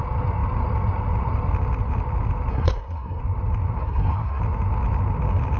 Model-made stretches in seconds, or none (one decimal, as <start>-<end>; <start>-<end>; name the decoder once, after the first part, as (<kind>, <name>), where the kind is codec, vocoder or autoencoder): 2.5-3.2 (codec, SNAC); 3.8-4.4